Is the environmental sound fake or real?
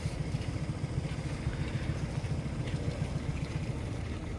real